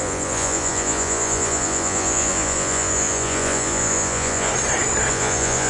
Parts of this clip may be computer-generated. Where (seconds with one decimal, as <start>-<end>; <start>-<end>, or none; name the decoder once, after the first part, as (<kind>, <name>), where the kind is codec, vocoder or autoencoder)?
0.0-4.5 (vocoder, Vocos); 5.1-5.7